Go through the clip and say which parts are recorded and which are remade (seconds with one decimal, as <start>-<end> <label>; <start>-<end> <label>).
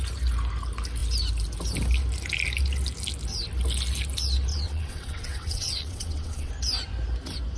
0.0-4.5 recorded; 4.5-6.5 remade; 6.5-7.6 recorded